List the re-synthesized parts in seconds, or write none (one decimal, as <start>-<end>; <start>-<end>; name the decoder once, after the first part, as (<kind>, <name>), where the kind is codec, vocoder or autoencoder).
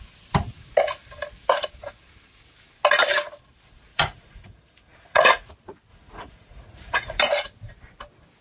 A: 3.9-5.5 (vocoder, Vocos); 5.9-7.2